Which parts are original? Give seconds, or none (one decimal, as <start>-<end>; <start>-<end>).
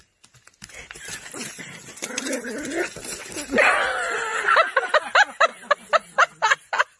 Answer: 0.0-0.8; 2.3-4.3; 5.0-7.0